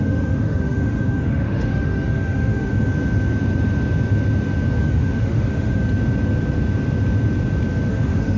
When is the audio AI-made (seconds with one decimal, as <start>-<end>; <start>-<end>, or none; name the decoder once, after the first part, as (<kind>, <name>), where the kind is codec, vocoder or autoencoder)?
0.0-2.7 (autoencoder, DAC-VAE); 4.8-5.8; 7.9-8.4